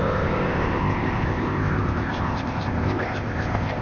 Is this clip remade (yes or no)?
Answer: yes